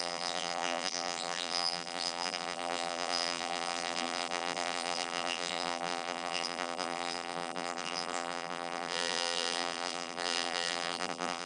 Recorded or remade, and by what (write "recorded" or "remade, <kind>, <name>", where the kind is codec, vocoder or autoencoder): remade, vocoder, BigVGAN v2